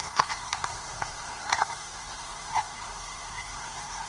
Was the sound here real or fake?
fake